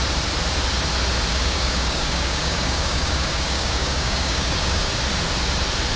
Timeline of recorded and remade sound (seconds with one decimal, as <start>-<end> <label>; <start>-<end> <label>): 0.0-1.3 recorded; 1.3-4.9 remade; 4.9-6.0 recorded